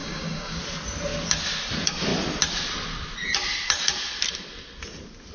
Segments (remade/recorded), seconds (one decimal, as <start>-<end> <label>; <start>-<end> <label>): 0.0-0.6 remade; 0.6-5.3 recorded